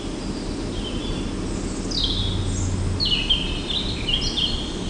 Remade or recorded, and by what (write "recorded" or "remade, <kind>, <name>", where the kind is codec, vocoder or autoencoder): recorded